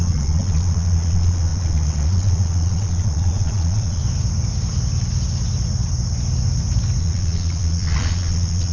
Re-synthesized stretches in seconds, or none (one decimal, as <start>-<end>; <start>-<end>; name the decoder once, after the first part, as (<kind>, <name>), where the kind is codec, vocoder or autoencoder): 0.0-4.0 (vocoder, Vocos); 7.0-8.7